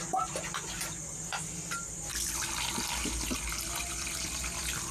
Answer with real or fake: real